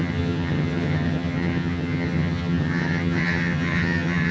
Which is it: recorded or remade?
remade